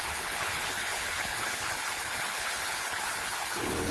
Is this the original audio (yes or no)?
no